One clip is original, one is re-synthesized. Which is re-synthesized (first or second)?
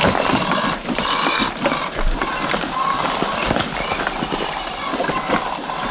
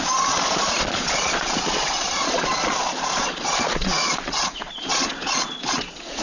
second